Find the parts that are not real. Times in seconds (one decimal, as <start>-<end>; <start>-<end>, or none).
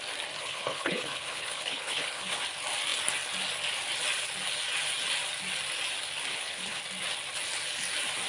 0.4-2.4; 6.3-6.8